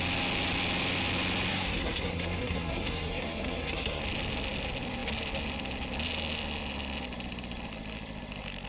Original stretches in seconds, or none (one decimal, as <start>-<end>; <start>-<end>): 0.0-1.5; 4.0-8.7